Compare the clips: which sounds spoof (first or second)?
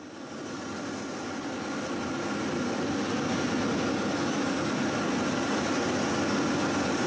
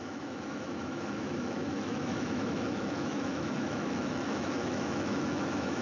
second